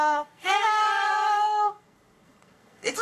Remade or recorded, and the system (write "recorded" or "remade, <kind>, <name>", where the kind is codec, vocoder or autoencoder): remade, codec, SNAC